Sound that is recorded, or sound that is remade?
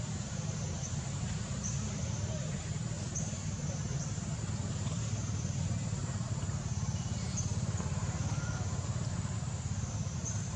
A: remade